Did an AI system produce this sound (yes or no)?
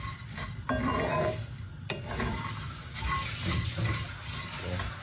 no